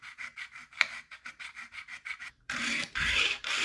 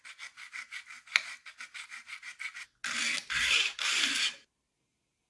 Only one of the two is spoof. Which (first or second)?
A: first